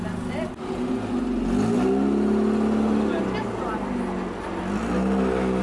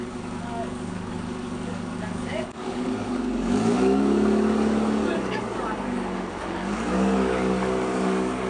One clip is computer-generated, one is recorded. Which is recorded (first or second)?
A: first